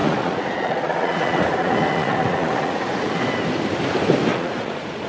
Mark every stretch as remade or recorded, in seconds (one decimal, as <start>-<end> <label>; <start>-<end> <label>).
0.0-3.1 remade; 3.1-4.3 recorded; 4.3-5.1 remade